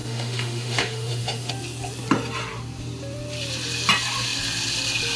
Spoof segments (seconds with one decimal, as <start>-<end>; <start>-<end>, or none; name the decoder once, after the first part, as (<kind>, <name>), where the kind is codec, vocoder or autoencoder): 0.0-1.5 (autoencoder, DAC-VAE)